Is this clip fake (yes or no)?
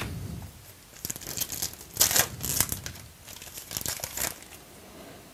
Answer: no